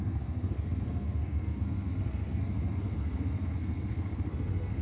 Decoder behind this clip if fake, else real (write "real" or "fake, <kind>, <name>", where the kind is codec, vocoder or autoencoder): fake, codec, SNAC